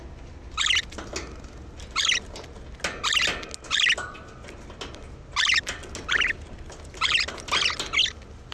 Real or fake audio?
real